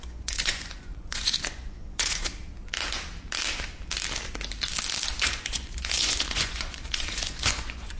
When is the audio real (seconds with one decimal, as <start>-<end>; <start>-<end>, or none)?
2.3-5.2